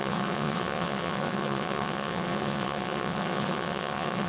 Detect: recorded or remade remade